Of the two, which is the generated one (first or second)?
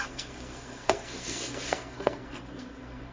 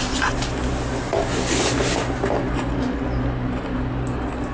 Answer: first